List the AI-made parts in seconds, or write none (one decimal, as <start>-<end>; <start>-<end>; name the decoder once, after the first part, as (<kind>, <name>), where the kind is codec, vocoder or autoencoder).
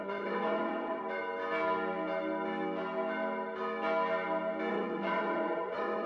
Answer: 0.0-1.0 (vocoder, WaveNeXt); 4.7-6.1